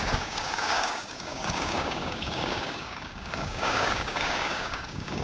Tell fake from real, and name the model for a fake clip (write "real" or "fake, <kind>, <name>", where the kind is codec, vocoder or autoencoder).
fake, codec, DAC